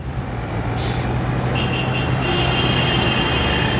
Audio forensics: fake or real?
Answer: real